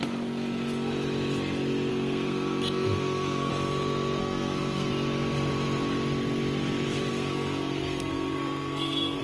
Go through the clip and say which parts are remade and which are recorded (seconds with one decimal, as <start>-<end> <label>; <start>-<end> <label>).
0.0-1.9 recorded; 1.9-3.5 remade; 3.5-4.2 recorded; 4.2-4.9 remade; 4.9-7.1 recorded; 7.1-9.2 remade